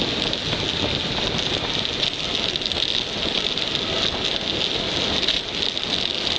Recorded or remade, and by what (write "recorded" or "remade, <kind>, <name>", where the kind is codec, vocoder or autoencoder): recorded